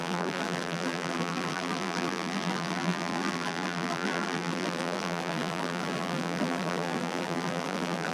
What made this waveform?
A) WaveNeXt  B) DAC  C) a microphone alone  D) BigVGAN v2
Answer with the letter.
D